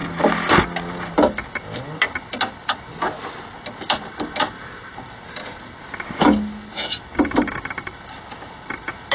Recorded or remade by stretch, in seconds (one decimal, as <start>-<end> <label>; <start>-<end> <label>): 0.0-9.1 recorded